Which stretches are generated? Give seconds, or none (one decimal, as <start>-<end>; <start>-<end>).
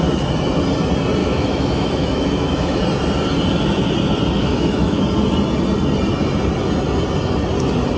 1.2-2.8; 4.4-5.0